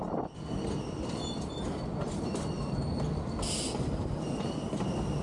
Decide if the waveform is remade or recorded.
recorded